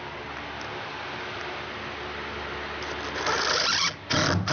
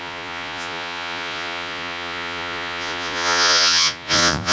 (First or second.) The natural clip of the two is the first